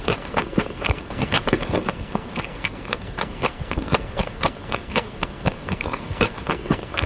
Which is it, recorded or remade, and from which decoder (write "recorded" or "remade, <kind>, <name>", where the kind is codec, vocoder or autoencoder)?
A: remade, codec, SNAC